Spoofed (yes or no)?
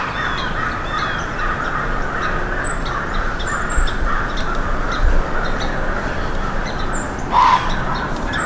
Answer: no